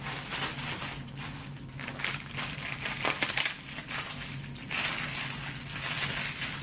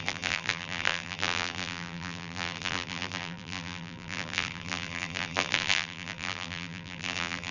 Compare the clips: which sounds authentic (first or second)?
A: first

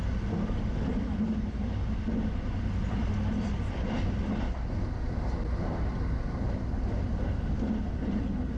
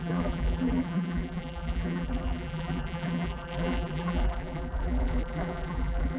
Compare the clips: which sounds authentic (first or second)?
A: first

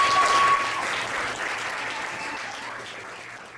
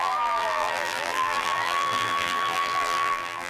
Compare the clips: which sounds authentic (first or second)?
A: first